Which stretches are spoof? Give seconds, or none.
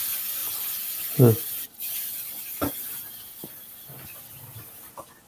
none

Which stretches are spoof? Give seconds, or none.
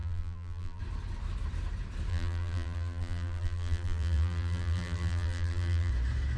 0.0-0.8 (vocoder, BigVGAN v2); 2.1-5.9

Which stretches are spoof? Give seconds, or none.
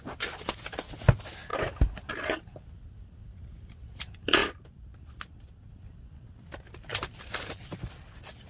none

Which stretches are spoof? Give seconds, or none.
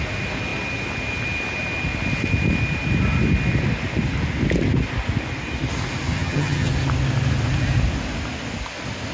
6.1-6.7 (vocoder, HiFi-GAN)